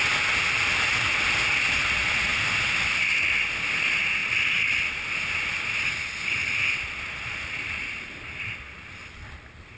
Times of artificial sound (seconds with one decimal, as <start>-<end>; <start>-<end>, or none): none